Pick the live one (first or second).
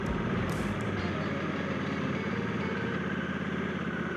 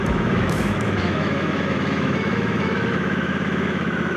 first